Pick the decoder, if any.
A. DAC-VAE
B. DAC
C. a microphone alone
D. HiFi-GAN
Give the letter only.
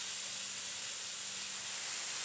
C